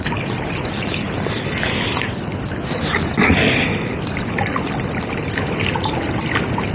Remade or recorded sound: recorded